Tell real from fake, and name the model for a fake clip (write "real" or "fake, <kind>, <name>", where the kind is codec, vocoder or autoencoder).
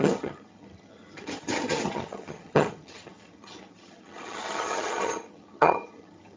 fake, vocoder, HiFi-GAN